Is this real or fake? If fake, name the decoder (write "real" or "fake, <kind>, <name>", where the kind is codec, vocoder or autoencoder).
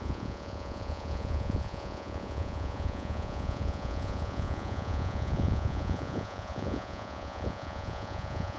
fake, vocoder, Vocos